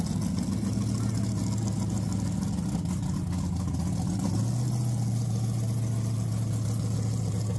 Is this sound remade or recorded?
recorded